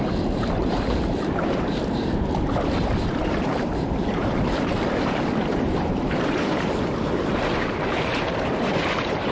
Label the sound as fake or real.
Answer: fake